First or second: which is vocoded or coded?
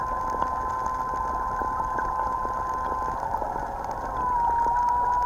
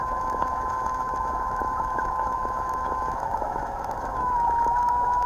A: second